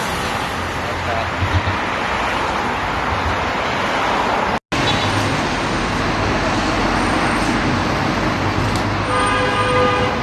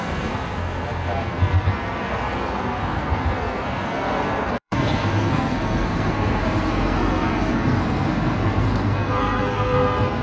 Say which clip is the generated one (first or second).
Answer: second